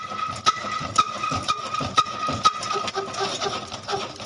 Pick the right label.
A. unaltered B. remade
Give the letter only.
A